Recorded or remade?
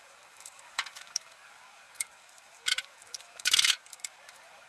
remade